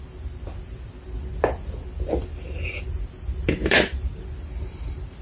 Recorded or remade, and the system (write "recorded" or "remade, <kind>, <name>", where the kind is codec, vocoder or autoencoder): recorded